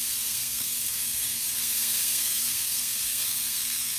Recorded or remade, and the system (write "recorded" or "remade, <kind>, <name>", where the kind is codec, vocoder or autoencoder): remade, codec, SNAC